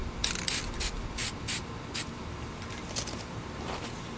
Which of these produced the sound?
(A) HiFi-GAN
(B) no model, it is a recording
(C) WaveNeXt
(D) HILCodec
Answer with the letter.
B